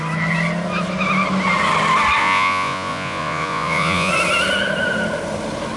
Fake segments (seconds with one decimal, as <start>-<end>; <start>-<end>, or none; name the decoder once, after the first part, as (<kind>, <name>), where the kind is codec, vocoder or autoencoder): 2.2-4.1 (vocoder, Vocos)